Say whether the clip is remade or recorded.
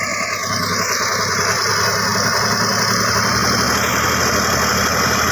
recorded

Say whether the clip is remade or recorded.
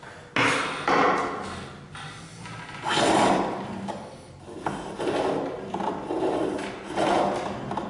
recorded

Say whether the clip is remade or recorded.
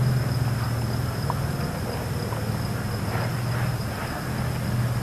recorded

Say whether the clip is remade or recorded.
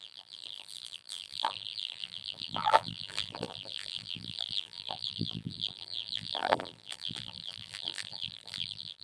remade